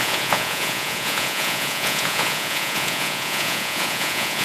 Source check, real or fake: fake